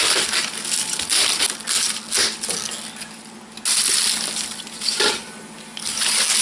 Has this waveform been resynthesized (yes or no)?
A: no